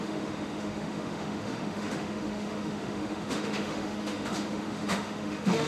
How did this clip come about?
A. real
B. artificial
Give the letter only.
B